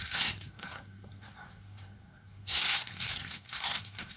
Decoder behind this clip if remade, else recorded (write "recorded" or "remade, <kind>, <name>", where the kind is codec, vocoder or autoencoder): remade, codec, SNAC